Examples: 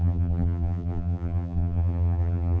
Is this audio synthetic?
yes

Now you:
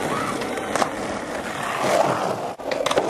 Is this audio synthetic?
no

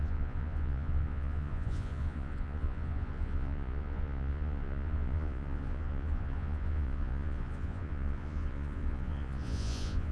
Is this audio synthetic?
yes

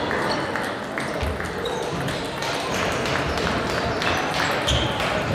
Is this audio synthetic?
no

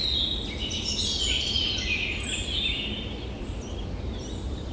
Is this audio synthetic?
no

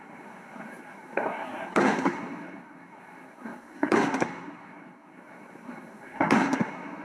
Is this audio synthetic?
yes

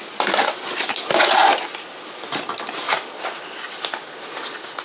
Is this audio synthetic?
no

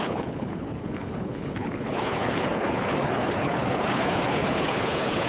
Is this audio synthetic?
yes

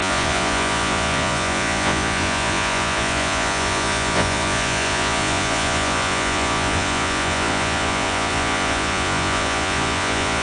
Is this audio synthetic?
yes